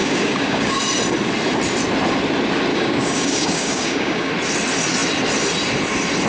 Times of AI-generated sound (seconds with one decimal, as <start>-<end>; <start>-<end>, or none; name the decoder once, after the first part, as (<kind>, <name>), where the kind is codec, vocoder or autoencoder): 0.0-0.8 (codec, DAC); 2.7-4.3